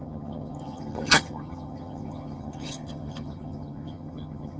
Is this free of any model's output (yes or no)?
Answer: no